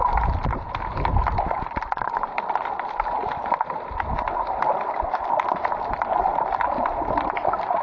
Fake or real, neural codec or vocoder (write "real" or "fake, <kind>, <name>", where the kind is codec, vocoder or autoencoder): real